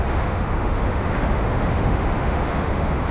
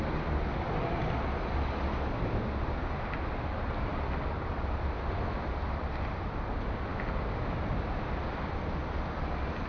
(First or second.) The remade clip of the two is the first